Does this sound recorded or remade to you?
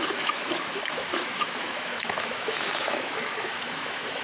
remade